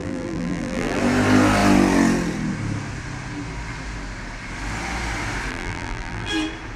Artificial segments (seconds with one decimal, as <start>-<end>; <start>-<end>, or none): 0.0-1.0; 5.5-6.3